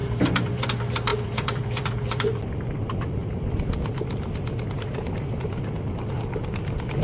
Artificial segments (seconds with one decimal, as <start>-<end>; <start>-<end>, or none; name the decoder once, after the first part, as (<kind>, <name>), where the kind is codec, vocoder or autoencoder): 0.0-3.2 (vocoder, BigVGAN v2); 6.5-7.0

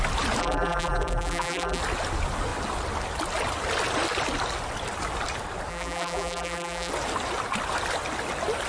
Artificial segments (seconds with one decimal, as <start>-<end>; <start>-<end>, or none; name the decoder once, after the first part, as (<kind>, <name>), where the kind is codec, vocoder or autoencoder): 0.4-1.8 (vocoder, BigVGAN v2); 5.7-6.9